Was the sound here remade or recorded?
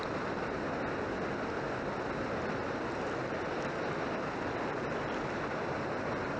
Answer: recorded